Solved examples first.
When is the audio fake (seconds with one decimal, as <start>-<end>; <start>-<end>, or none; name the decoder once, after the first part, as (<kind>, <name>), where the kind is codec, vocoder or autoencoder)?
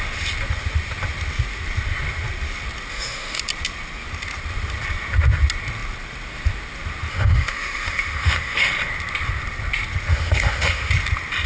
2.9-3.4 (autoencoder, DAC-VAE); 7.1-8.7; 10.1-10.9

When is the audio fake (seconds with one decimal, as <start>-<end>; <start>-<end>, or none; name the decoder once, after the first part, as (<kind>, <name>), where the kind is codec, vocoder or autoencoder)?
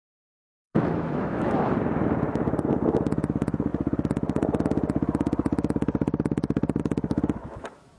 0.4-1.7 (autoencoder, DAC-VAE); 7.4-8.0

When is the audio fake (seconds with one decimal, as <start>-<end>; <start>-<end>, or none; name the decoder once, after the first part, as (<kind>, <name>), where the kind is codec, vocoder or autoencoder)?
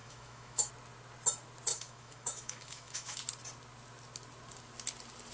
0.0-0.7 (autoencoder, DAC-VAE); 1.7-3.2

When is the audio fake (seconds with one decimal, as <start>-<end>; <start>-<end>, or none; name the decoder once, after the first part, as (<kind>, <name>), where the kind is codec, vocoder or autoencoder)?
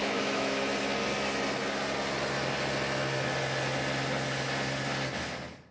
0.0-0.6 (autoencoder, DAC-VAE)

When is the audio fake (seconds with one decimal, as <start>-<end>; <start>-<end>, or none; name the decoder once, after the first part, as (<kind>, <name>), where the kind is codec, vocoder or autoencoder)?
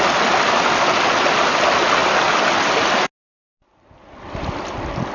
none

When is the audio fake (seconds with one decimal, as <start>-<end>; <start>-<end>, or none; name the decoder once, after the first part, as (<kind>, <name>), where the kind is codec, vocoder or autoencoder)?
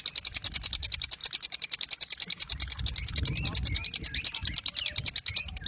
none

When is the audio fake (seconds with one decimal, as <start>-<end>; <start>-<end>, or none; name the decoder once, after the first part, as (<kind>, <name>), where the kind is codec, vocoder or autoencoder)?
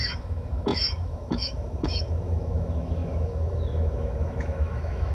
0.0-5.1 (autoencoder, DAC-VAE)